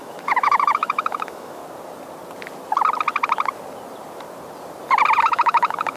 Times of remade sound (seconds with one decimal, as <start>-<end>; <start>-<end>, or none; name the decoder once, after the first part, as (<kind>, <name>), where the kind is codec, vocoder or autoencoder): 0.0-1.6 (autoencoder, DAC-VAE); 5.2-6.0